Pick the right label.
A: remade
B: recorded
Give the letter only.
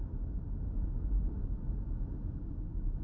B